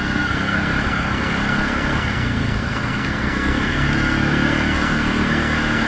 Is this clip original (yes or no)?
no